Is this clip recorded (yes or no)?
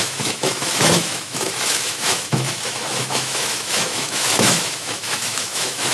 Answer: no